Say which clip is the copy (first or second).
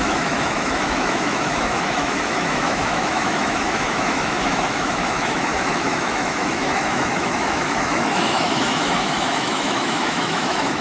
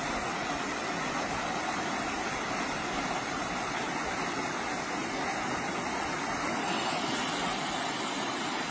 first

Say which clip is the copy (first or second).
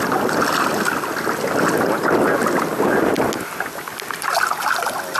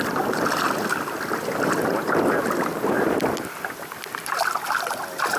second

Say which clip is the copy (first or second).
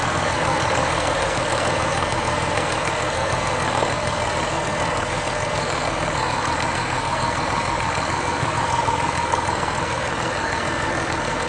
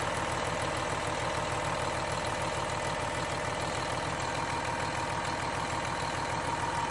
first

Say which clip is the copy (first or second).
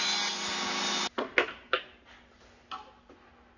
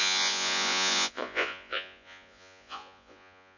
second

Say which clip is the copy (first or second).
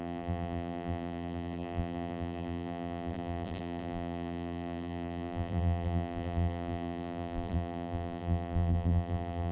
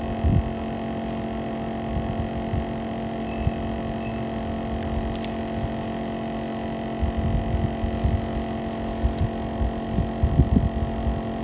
first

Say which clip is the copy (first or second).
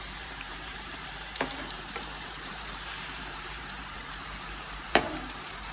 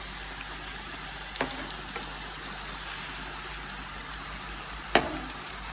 first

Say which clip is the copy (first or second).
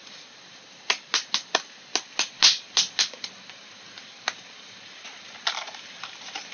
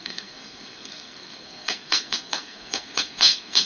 second